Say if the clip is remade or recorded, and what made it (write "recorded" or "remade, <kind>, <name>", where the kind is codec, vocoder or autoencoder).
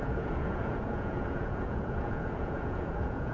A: remade, vocoder, Vocos